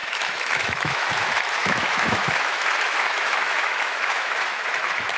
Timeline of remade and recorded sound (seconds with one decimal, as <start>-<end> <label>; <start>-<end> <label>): 0.0-5.2 remade